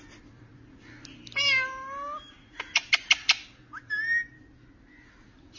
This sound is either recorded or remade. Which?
recorded